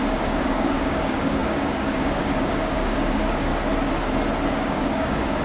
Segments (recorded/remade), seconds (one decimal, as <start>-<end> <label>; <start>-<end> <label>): 0.0-3.5 remade; 3.5-4.5 recorded; 4.5-5.4 remade

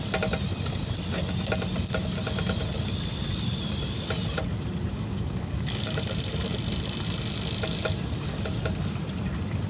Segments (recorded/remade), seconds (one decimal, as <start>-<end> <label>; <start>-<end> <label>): 0.0-4.9 recorded; 4.9-6.0 remade; 6.0-9.7 recorded

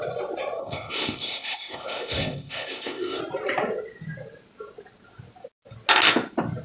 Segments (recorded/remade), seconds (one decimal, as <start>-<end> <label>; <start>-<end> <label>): 0.0-0.6 recorded; 0.6-3.2 remade; 3.2-6.6 recorded

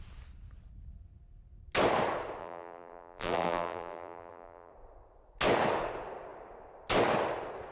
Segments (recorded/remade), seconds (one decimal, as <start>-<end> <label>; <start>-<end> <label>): 0.0-2.4 recorded; 2.4-4.7 remade; 4.7-7.7 recorded

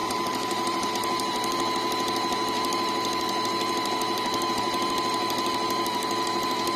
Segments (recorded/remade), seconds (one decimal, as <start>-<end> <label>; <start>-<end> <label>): 0.0-0.9 remade; 0.9-6.8 recorded